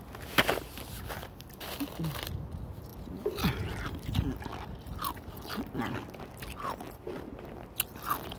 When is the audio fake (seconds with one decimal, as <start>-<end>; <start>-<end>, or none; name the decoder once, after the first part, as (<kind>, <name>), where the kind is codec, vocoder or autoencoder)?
none